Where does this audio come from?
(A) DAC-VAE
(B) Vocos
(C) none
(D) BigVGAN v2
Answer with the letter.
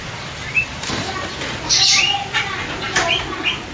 D